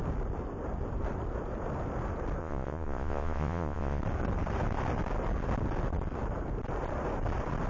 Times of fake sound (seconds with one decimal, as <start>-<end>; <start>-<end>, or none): 2.4-4.0